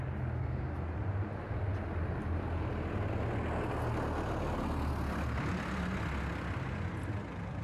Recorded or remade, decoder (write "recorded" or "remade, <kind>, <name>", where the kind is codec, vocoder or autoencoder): recorded